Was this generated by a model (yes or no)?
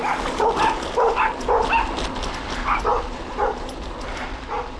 no